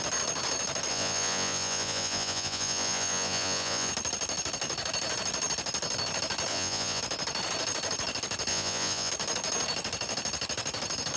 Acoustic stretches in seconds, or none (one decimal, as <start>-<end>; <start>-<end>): 0.0-0.9; 3.9-6.5; 7.0-8.5; 9.1-11.2